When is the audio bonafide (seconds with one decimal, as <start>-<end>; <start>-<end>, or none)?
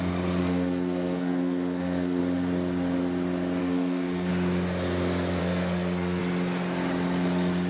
0.0-0.4; 2.2-3.6; 4.3-5.4; 6.2-7.7